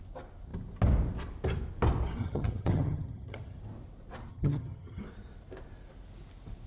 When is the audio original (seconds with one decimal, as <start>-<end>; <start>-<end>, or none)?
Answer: 0.0-2.2; 3.6-4.3; 5.0-6.7

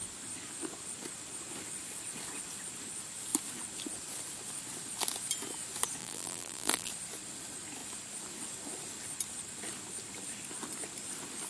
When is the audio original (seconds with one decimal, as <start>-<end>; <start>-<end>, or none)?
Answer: 0.0-6.0; 6.9-11.5

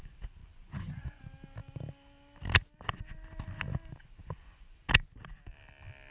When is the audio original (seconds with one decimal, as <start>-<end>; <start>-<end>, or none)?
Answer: 0.0-0.4; 1.2-4.2; 4.9-6.1

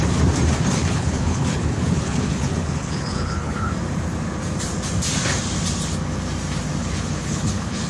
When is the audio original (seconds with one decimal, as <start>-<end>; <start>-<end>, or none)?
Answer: 0.0-0.8; 3.7-6.8

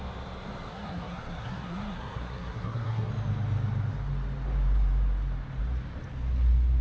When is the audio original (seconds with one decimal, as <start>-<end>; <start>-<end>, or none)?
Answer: 0.0-0.7; 3.1-6.8

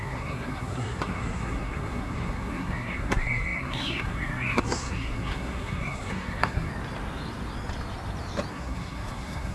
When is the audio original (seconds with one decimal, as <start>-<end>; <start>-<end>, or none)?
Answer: 6.7-8.5